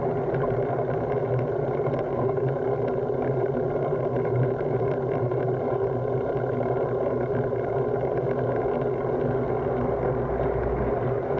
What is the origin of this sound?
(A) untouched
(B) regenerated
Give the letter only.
A